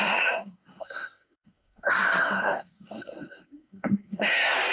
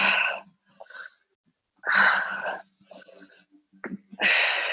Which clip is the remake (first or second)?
first